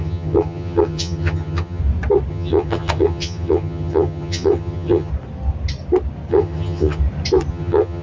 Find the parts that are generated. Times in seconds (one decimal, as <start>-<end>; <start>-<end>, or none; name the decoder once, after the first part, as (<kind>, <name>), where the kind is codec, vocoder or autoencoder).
0.0-1.8 (vocoder, HiFi-GAN); 2.3-5.1; 6.3-7.0; 7.5-8.0